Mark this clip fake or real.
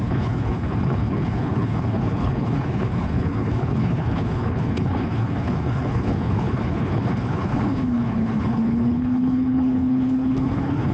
fake